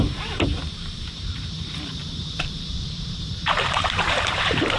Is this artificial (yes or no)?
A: yes